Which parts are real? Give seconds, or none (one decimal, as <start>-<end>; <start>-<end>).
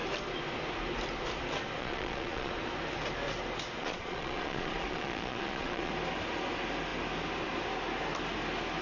0.0-1.8; 2.5-3.8; 5.9-8.8